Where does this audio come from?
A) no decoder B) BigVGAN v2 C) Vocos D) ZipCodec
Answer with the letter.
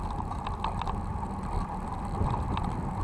A